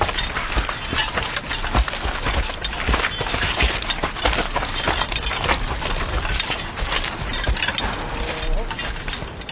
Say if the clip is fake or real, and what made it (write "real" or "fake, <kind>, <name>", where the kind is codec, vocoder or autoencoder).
real